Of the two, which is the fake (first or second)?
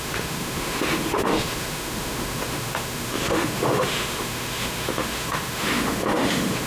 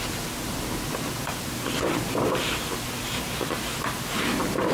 first